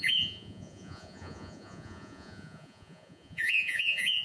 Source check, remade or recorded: remade